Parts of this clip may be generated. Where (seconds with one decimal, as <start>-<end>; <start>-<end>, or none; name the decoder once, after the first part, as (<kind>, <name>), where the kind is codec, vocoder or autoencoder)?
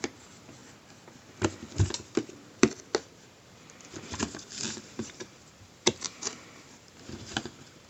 0.0-0.6 (vocoder, BigVGAN v2); 3.0-4.2; 4.8-7.9